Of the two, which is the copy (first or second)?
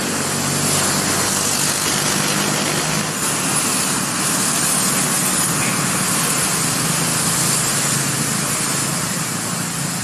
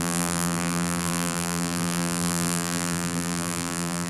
second